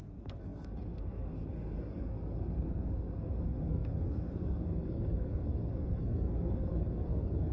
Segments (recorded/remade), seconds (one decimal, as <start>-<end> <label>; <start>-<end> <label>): 0.0-7.5 remade